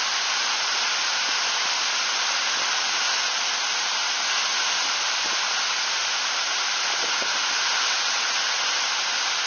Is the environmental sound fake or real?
real